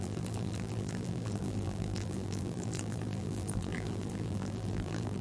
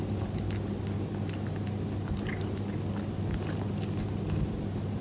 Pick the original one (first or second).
second